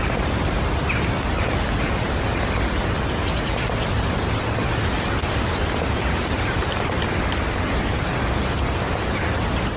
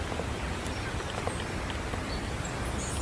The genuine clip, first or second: second